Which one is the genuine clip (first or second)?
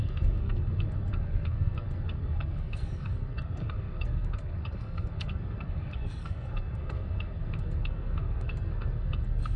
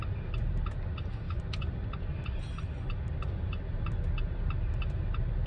second